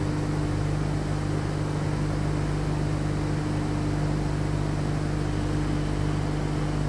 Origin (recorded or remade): recorded